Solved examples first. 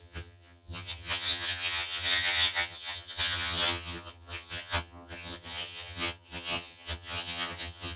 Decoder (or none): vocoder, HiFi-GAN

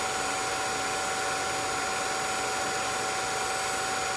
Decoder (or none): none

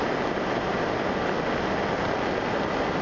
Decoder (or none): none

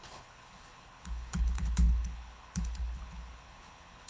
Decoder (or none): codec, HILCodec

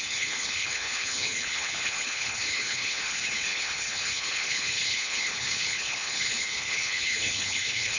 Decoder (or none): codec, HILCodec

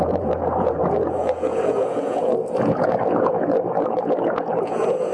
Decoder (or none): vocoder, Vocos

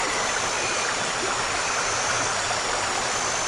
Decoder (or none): none